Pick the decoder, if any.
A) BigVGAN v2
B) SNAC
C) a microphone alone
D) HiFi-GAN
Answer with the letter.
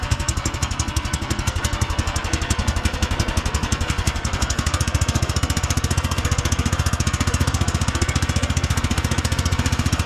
B